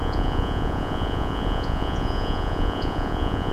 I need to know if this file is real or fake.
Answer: fake